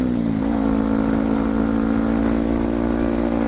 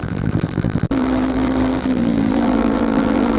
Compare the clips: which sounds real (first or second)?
first